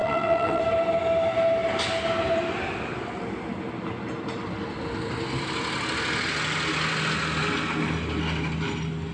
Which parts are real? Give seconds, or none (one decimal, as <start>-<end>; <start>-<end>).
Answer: 0.6-9.1